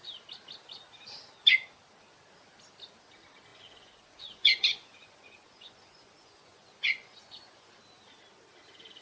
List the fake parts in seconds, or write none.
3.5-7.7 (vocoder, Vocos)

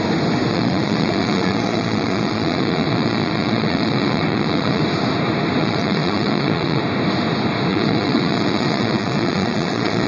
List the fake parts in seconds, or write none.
0.5-4.8 (vocoder, Vocos); 5.6-6.8; 7.7-10.1

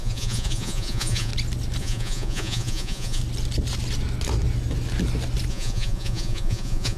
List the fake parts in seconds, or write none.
0.0-1.3 (vocoder, Vocos); 1.8-3.2; 5.5-7.0